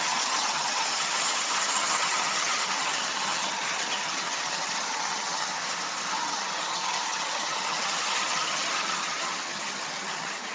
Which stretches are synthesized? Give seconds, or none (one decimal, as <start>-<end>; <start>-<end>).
0.0-5.5; 6.1-10.5